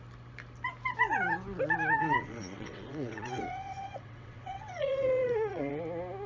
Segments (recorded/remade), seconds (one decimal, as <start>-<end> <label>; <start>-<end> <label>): 0.0-2.0 recorded; 2.0-5.8 remade; 5.8-6.3 recorded

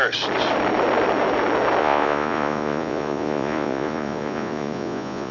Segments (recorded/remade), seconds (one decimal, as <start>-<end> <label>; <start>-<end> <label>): 0.0-1.8 recorded; 1.8-5.3 remade

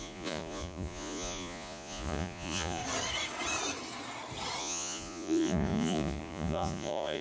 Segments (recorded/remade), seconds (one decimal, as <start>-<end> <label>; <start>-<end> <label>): 0.0-2.8 remade; 2.8-4.6 recorded; 4.6-7.2 remade

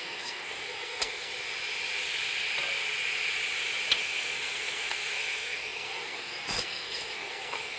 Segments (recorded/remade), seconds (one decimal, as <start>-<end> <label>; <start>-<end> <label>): 0.0-1.3 remade; 1.3-4.0 recorded; 4.0-7.8 remade

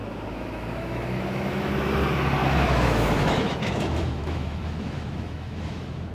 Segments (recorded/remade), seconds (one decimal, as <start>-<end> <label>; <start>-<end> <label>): 0.0-1.7 remade; 1.7-2.4 recorded; 2.4-6.1 remade

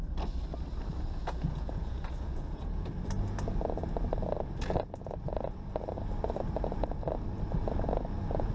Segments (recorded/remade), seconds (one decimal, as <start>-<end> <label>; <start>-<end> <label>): 0.0-1.2 recorded; 1.2-2.9 remade; 2.9-8.5 recorded

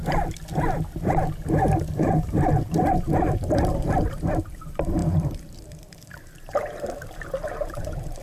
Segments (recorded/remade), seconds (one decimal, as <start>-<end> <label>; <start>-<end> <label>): 0.0-1.6 recorded; 1.6-8.2 remade